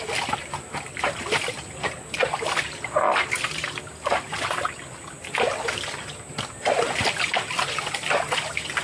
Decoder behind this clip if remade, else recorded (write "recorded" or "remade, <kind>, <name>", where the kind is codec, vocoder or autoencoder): recorded